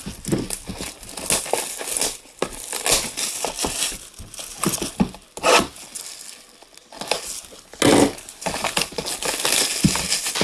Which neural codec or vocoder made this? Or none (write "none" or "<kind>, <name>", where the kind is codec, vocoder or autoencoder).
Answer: none